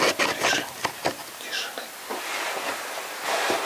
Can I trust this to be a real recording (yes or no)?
yes